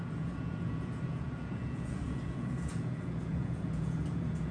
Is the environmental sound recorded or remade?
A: remade